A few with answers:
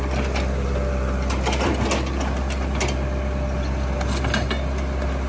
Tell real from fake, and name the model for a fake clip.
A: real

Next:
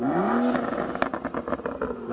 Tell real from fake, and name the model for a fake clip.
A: real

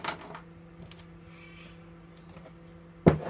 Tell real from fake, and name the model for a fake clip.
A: real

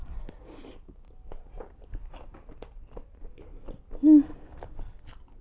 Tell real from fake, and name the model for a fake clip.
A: real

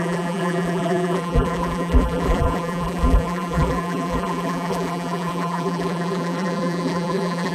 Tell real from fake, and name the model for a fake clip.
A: fake, vocoder, BigVGAN v2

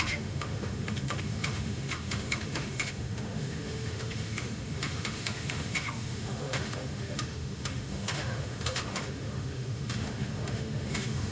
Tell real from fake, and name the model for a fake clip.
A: fake, autoencoder, DAC-VAE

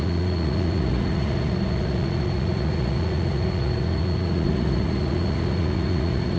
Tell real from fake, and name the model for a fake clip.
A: fake, vocoder, Vocos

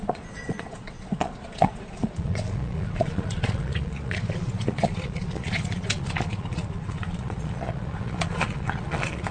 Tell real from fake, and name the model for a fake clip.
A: fake, vocoder, Vocos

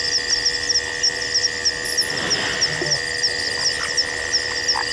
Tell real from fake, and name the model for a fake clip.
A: real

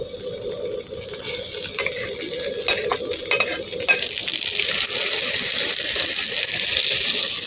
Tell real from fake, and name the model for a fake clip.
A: real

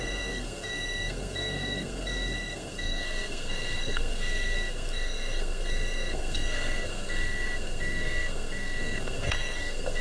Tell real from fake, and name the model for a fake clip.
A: fake, codec, SNAC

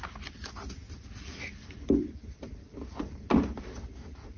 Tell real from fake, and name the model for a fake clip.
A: real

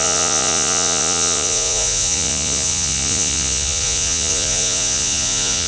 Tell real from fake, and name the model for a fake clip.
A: fake, vocoder, Vocos